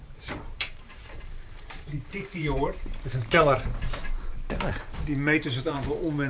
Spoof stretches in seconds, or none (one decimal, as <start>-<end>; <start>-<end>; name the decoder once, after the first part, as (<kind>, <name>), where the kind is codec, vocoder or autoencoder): 0.0-6.3 (vocoder, BigVGAN v2)